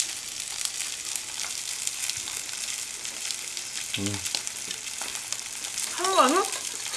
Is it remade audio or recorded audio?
recorded